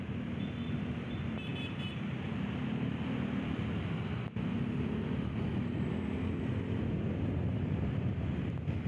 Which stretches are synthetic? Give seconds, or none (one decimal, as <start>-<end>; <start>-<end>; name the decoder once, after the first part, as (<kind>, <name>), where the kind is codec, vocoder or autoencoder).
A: none